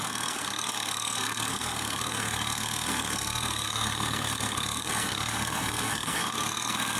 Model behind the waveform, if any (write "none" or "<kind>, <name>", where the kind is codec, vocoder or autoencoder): codec, SNAC